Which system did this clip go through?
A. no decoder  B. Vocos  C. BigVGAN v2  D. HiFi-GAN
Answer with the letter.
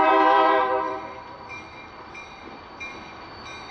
C